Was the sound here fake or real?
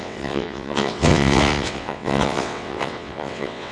fake